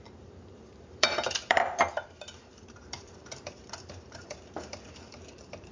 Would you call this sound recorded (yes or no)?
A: no